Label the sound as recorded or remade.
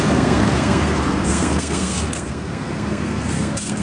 remade